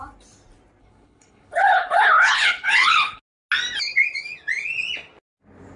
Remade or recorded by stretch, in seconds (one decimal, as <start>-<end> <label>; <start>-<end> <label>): 0.0-0.8 recorded; 0.8-3.2 remade; 3.2-5.8 recorded